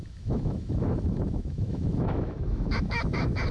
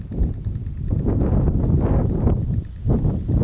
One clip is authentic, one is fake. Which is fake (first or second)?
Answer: first